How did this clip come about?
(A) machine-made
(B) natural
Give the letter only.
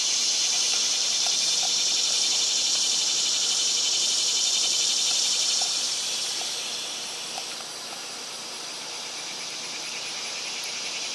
A